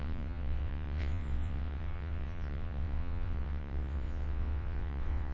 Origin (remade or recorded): remade